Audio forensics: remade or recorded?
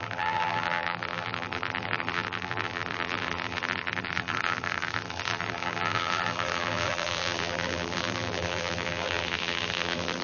remade